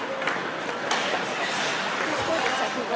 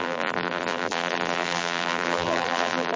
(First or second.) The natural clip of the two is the first